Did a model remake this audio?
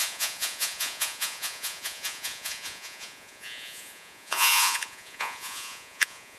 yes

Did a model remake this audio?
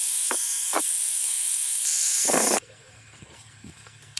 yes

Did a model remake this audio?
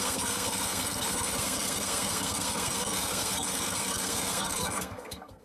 yes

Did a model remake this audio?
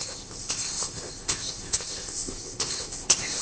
yes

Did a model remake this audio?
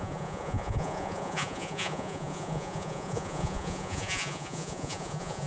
yes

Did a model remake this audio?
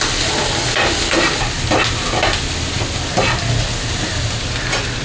no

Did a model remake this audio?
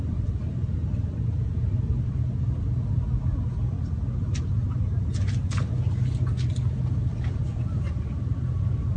no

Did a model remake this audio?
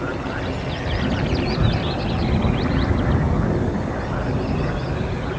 no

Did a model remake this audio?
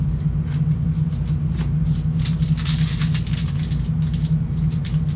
no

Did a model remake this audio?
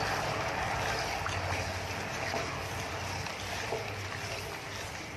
no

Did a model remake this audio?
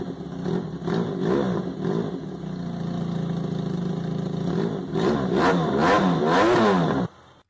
no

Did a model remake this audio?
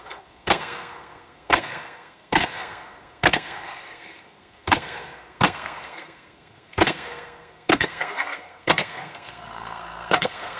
yes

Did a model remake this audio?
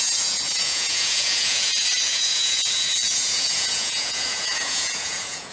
yes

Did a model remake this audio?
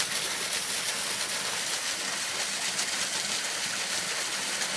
no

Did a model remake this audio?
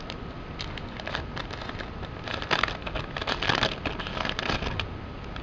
no